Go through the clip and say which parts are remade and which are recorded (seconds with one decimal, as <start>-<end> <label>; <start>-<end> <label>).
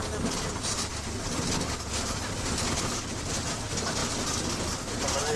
0.0-5.4 recorded